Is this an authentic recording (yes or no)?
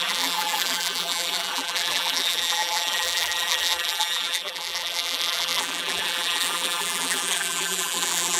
no